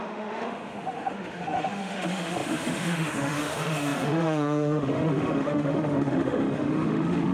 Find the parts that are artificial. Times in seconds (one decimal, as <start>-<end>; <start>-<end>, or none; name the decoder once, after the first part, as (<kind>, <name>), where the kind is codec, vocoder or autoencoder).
0.0-7.3 (autoencoder, DAC-VAE)